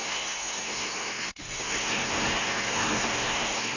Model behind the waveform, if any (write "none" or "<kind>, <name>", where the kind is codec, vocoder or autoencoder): codec, SNAC